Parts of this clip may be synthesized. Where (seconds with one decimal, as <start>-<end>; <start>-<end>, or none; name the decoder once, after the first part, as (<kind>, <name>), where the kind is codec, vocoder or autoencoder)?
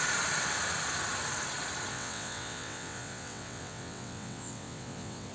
1.9-5.3 (vocoder, WaveNeXt)